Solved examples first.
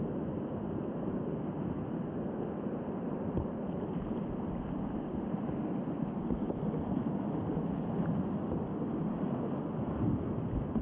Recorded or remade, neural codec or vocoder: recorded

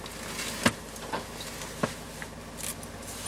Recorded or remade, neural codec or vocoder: recorded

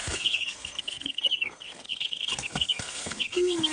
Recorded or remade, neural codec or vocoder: remade, codec, SNAC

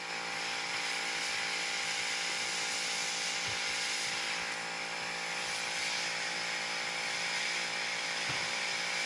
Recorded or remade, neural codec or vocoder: recorded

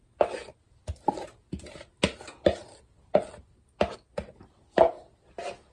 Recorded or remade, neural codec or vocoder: recorded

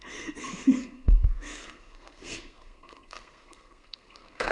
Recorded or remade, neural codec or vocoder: remade, codec, SNAC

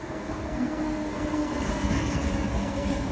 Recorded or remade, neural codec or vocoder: remade, codec, SNAC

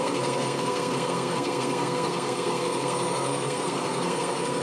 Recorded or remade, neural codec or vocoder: remade, codec, SNAC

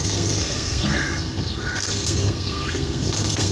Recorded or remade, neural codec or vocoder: remade, codec, SNAC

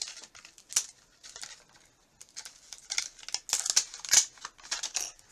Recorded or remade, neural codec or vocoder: recorded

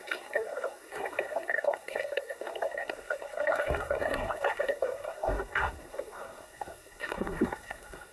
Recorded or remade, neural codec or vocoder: remade, codec, SNAC